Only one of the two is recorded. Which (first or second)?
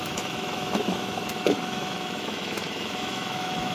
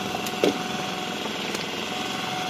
second